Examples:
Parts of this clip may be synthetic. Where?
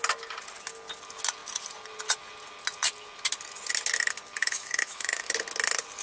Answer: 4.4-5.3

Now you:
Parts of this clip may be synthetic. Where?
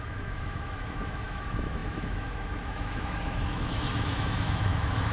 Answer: 0.0-5.1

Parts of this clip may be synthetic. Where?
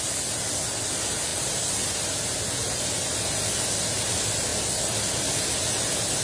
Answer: none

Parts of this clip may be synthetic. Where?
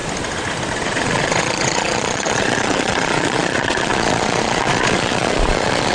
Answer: 0.7-5.9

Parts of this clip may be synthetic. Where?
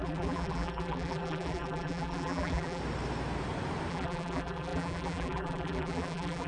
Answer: 0.0-2.8; 3.9-6.5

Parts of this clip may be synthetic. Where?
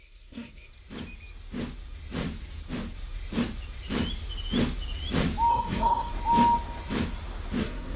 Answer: 0.0-0.7; 5.5-6.1; 7.6-8.0